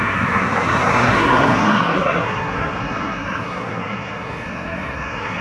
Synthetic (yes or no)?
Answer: yes